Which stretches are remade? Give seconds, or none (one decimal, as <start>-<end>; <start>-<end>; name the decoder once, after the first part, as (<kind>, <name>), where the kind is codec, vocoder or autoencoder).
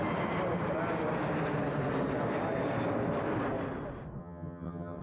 4.2-5.0 (vocoder, HiFi-GAN)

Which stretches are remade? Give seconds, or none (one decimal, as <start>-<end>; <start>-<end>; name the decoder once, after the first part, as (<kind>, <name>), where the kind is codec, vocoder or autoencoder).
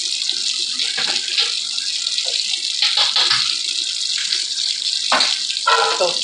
4.2-4.9 (codec, HILCodec)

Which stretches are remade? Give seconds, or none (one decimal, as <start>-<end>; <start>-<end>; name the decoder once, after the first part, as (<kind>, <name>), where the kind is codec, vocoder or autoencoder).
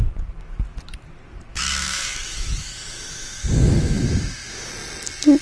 1.5-4.7 (autoencoder, DAC-VAE)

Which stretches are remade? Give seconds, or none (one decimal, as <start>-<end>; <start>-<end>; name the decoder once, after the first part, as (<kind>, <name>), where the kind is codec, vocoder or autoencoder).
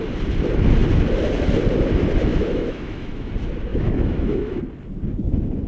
2.3-3.3 (autoencoder, DAC-VAE); 3.7-4.6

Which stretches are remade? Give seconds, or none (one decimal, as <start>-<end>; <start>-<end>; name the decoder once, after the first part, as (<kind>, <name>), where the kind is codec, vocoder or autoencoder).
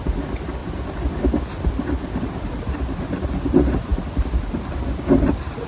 none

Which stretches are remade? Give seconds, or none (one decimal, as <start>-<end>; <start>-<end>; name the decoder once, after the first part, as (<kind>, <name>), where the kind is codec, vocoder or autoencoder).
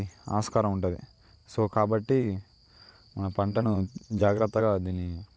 1.4-4.6 (vocoder, WaveNeXt)